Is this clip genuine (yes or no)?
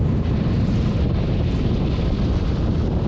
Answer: yes